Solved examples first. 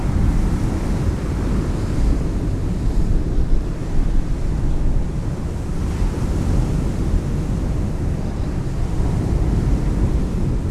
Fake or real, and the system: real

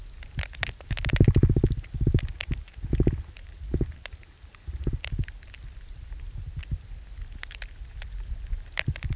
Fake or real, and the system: real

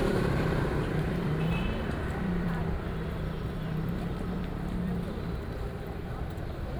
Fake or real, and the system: fake, vocoder, BigVGAN v2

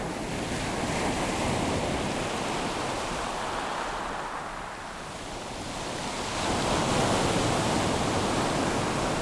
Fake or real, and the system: real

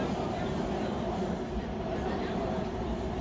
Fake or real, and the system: fake, vocoder, BigVGAN v2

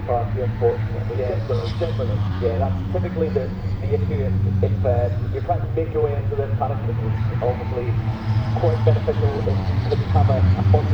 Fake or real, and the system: fake, vocoder, BigVGAN v2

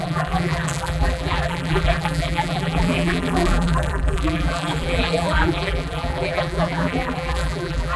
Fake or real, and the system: fake, vocoder, BigVGAN v2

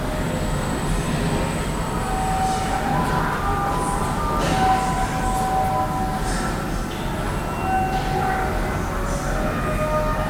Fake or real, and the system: real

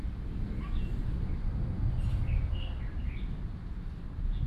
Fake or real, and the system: real